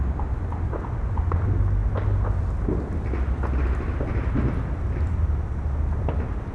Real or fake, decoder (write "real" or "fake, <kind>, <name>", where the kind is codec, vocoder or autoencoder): real